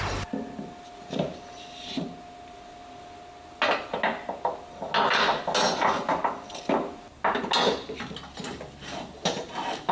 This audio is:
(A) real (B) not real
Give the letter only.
A